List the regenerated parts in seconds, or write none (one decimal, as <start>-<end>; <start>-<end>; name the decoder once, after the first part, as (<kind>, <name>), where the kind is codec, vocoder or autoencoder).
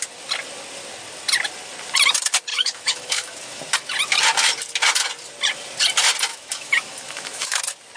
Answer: 2.5-3.6 (autoencoder, DAC-VAE); 6.3-7.6